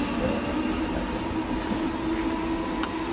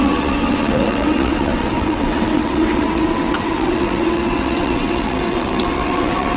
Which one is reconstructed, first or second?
second